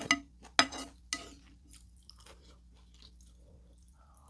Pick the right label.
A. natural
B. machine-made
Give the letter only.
A